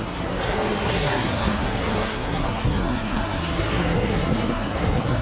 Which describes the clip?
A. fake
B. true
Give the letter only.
A